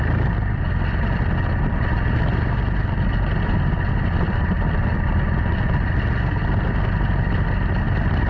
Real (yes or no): yes